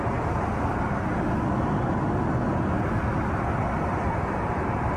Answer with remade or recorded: recorded